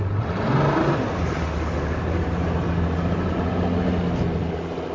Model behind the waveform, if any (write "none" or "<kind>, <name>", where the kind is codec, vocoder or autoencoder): none